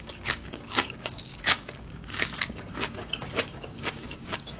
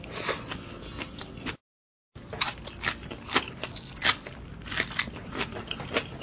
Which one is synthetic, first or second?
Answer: first